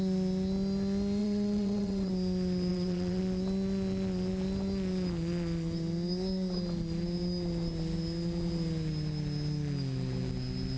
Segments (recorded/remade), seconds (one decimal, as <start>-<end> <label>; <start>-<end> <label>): 0.0-1.2 recorded; 1.2-2.1 remade; 2.1-2.7 recorded; 2.7-3.2 remade; 3.2-10.8 recorded